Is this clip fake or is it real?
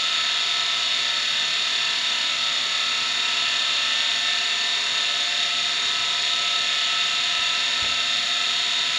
real